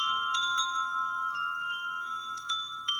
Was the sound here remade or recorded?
remade